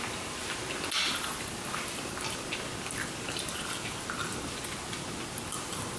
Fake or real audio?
real